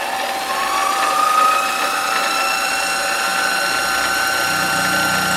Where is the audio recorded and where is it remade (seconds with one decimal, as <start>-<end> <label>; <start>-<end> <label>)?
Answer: 0.0-0.8 recorded; 0.8-2.7 remade; 2.7-5.4 recorded